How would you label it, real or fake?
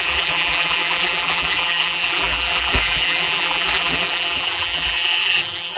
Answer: fake